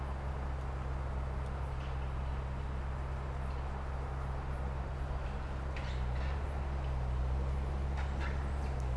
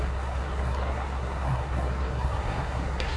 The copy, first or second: second